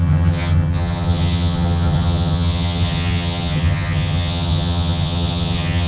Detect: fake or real fake